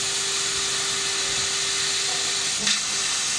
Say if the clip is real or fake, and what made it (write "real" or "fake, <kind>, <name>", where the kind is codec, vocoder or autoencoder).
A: real